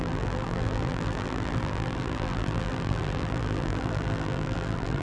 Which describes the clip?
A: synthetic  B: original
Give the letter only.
A